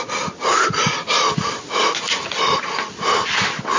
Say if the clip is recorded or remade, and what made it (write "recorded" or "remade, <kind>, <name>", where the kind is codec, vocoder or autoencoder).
recorded